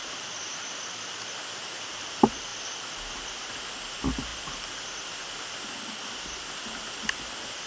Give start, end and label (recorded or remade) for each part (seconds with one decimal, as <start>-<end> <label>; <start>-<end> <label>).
0.0-7.7 recorded